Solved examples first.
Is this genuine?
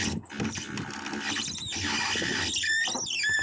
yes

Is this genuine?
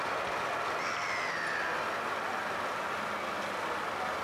yes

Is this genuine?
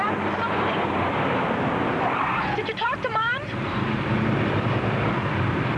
no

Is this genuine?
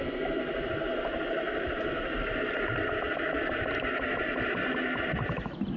yes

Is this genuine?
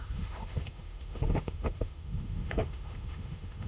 no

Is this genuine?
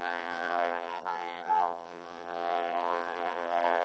no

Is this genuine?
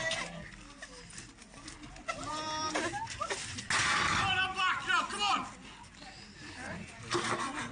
yes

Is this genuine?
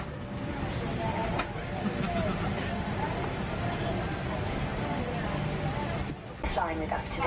yes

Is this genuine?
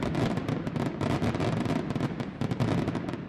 yes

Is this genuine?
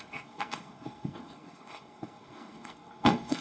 no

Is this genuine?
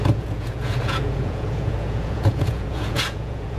no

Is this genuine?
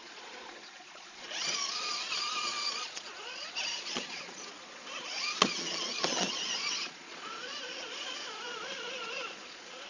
no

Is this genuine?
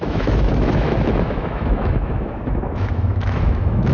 no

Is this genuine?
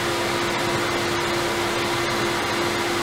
yes